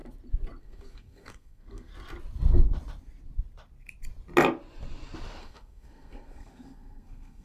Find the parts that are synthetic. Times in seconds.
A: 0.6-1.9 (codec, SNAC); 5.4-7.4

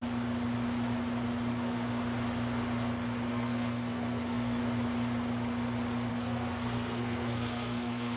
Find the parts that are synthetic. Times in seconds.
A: 1.5-2.0 (codec, SNAC); 3.3-4.6; 6.1-8.2

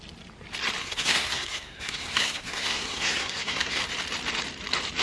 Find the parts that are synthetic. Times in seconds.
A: 0.8-3.8 (codec, SNAC)

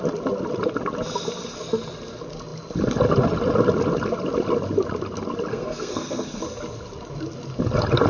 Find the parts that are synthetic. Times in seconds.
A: 5.5-6.4 (codec, SNAC)

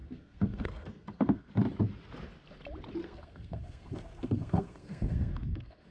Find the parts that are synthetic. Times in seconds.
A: 0.0-1.5 (codec, SNAC); 3.0-5.9

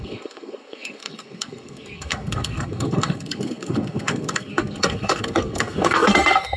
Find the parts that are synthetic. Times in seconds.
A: 0.0-6.6 (codec, SNAC)

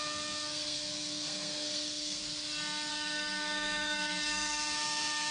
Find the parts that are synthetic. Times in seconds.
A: 0.0-2.2 (codec, SNAC); 2.9-5.3